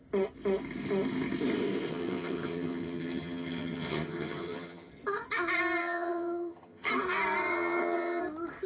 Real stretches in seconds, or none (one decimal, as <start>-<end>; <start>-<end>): 0.0-1.9; 4.9-5.8; 6.9-7.5; 8.2-8.7